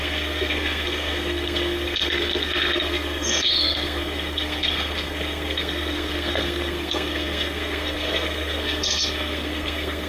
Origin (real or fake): fake